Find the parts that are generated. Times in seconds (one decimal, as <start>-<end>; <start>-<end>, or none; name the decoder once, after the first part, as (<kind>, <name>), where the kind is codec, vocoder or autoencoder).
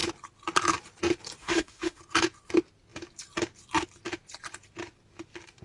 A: 1.4-2.0 (autoencoder, DAC-VAE)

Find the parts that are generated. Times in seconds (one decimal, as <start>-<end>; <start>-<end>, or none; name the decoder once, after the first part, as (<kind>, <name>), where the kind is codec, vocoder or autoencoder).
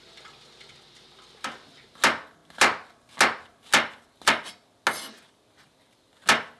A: none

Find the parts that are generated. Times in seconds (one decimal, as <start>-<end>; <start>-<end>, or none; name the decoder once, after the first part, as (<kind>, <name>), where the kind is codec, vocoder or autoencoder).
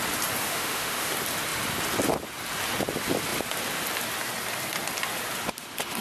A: 0.4-1.1 (autoencoder, DAC-VAE)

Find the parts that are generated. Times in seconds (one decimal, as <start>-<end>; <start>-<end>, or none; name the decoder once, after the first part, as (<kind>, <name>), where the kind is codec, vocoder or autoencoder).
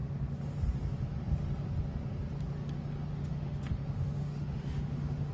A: 3.1-5.3 (autoencoder, DAC-VAE)